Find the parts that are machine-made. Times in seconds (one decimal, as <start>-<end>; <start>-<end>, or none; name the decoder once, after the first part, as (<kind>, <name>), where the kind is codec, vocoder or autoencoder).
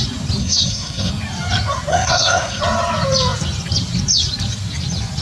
0.4-1.1 (codec, SNAC); 1.9-2.6